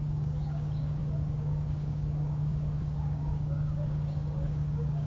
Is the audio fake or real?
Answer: fake